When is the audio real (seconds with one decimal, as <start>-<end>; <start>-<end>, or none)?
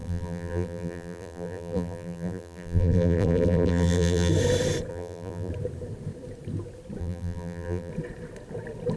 4.3-4.9; 5.5-7.0; 7.9-9.0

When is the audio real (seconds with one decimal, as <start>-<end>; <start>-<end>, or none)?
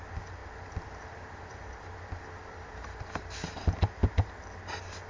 0.0-0.4; 3.5-5.1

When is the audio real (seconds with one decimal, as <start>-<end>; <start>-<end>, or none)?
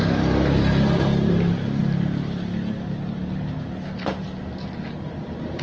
0.0-5.6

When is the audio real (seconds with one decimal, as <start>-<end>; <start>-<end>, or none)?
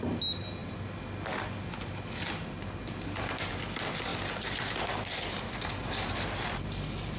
0.0-7.2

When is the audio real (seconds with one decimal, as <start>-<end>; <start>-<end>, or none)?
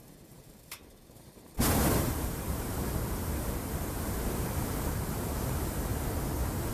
5.9-6.7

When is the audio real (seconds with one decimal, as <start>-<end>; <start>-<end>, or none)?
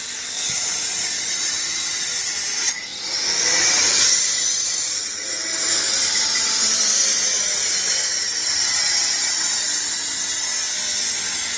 0.0-11.6